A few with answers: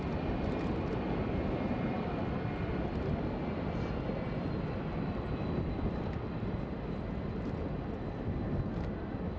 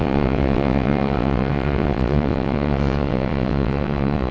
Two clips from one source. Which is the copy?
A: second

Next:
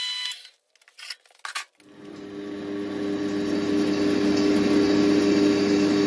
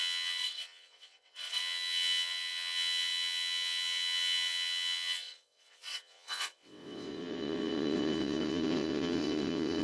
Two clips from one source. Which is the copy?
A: second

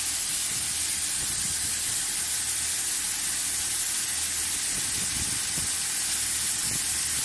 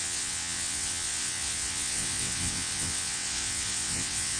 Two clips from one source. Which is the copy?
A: second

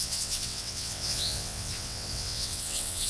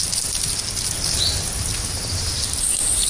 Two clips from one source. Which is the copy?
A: first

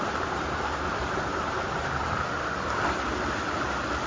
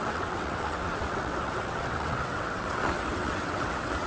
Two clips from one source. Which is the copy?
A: second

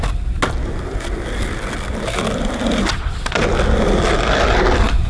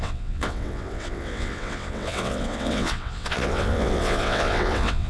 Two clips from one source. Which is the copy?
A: second